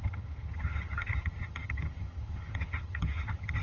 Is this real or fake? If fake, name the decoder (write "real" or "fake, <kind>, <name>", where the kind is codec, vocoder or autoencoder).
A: fake, vocoder, HiFi-GAN